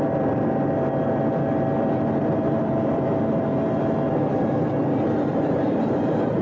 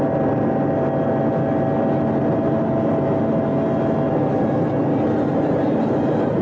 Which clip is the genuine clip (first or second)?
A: second